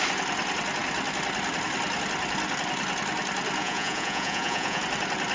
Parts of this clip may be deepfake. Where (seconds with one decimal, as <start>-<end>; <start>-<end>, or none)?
3.6-4.8